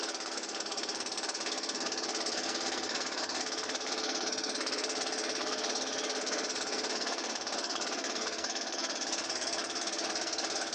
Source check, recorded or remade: remade